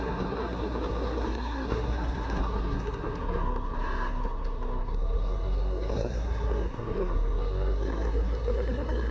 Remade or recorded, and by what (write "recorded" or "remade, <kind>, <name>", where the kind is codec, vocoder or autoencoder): remade, codec, SNAC